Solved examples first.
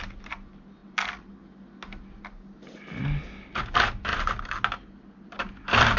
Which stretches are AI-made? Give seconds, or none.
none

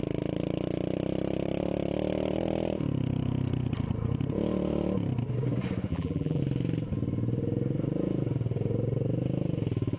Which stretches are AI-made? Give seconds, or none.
5.9-6.4 (vocoder, BigVGAN v2)

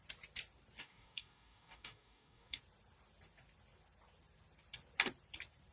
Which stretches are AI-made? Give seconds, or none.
0.8-2.6 (codec, DAC)

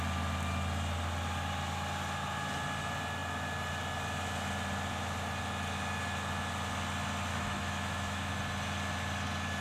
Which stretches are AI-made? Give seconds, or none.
7.3-8.3 (autoencoder, DAC-VAE)